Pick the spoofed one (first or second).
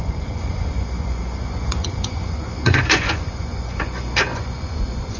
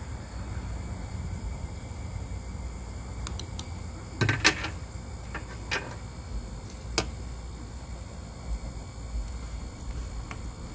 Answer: first